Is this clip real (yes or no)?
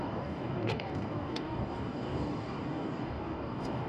no